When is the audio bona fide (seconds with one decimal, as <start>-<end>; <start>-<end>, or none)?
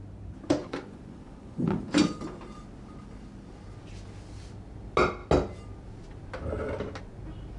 0.0-0.6; 1.8-7.6